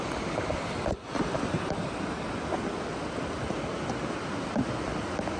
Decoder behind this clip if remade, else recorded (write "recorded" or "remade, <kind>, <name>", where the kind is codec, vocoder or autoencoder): recorded